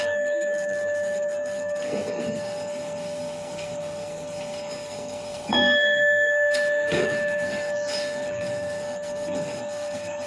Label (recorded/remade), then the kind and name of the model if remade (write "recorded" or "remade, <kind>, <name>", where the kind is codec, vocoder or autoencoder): remade, codec, SNAC